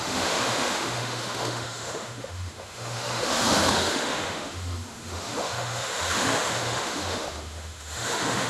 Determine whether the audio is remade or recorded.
remade